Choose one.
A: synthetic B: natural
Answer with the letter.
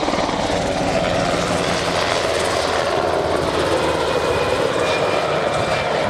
B